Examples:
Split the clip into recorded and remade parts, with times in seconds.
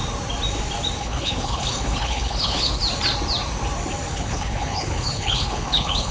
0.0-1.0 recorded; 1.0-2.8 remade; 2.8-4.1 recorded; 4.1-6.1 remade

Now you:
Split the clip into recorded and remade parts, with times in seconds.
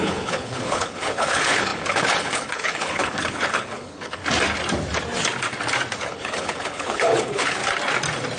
0.0-4.2 remade; 4.2-6.0 recorded; 6.0-7.6 remade; 7.6-8.4 recorded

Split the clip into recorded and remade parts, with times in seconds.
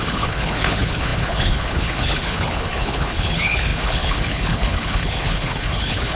0.0-6.2 remade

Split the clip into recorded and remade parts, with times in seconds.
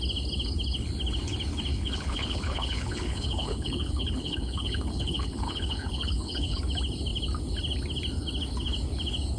0.0-1.7 recorded; 1.7-6.6 remade; 6.6-9.4 recorded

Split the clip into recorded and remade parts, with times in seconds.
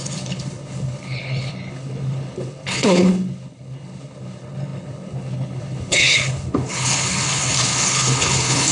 0.0-8.7 remade